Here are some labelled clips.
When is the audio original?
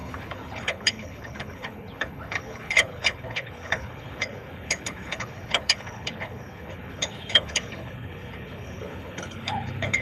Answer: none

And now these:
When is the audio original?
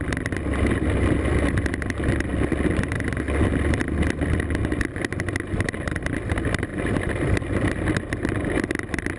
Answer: 0.0-6.7; 8.7-9.2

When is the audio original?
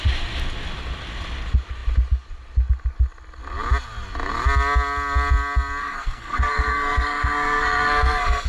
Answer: 0.0-5.8